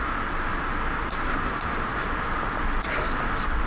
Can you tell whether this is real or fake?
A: real